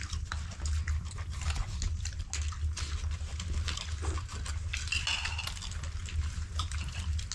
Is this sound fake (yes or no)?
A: no